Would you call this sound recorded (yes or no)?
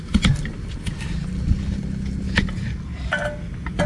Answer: yes